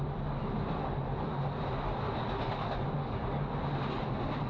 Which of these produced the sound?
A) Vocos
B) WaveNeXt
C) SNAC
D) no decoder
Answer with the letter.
D